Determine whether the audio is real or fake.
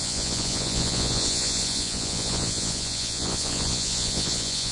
fake